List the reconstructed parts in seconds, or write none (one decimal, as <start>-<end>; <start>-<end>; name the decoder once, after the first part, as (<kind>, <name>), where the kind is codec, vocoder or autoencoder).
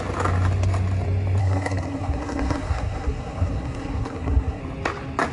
1.4-4.6 (codec, SNAC)